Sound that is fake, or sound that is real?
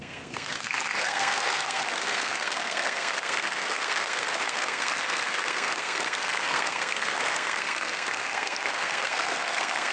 fake